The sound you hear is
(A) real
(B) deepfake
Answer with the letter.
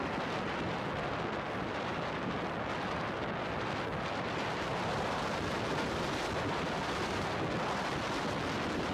A